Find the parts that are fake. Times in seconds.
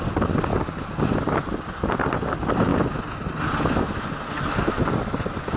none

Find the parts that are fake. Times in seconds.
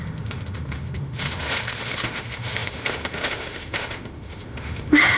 0.0-5.2 (autoencoder, DAC-VAE)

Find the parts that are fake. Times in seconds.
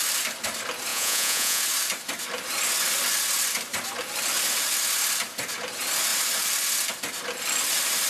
0.9-1.6 (vocoder, Vocos)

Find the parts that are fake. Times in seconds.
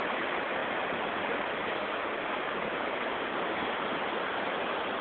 1.6-3.8 (codec, DAC)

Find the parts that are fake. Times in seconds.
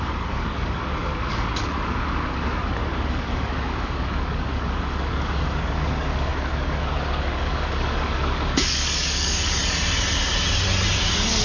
0.0-9.6 (codec, DAC)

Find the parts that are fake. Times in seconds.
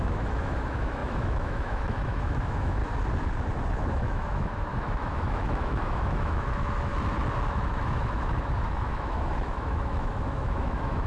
0.0-2.8 (autoencoder, DAC-VAE); 3.7-6.9; 7.5-11.1